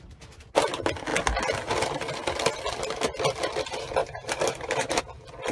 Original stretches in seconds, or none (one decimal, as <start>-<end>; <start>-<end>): 0.0-4.0; 5.0-5.5

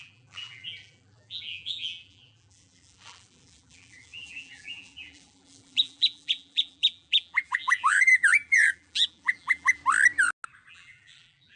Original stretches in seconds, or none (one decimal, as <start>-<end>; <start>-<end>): 9.8-10.7

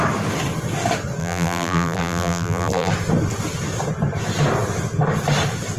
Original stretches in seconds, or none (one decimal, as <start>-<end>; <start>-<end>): 0.0-1.2; 2.9-5.8